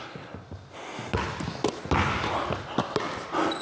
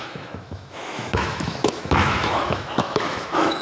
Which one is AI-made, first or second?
second